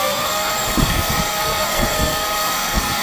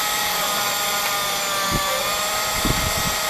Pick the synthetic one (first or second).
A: first